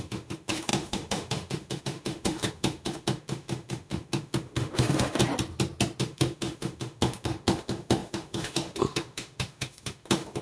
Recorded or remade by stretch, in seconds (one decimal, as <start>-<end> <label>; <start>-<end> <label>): 0.0-5.2 remade; 5.2-6.0 recorded; 6.0-10.4 remade